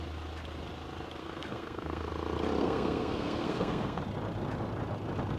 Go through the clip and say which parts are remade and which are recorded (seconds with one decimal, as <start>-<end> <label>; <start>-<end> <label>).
0.0-1.2 recorded; 1.2-2.1 remade; 2.1-2.6 recorded; 2.6-4.0 remade; 4.0-5.4 recorded